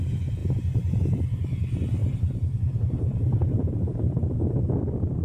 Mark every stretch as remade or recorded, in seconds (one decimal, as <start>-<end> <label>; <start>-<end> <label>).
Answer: 0.0-5.2 recorded